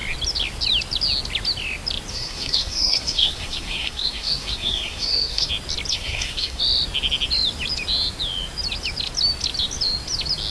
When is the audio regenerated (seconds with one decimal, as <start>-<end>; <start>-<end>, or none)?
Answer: 2.1-5.5; 5.9-6.6